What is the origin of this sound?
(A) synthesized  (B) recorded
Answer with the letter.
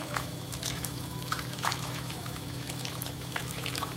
A